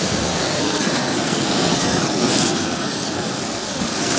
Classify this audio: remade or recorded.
remade